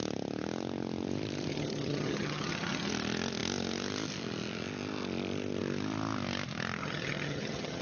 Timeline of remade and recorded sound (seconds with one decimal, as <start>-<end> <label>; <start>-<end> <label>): 0.0-1.5 recorded; 1.5-2.9 remade; 2.9-6.8 recorded; 6.8-7.8 remade